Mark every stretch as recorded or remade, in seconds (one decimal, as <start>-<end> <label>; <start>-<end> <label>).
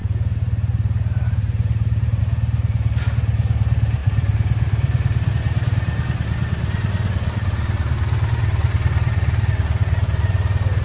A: 0.0-2.2 remade; 2.2-4.0 recorded; 4.0-5.3 remade; 5.3-10.8 recorded